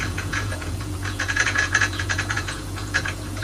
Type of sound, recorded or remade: remade